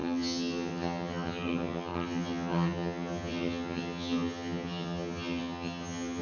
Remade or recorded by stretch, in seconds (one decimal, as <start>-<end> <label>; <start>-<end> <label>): 0.0-6.2 remade